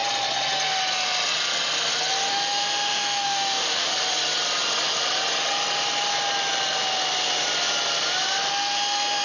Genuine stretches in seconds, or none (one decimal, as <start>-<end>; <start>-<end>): 0.0-2.3; 3.9-8.5